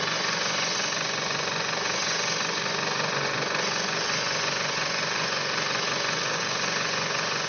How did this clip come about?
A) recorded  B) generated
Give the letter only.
B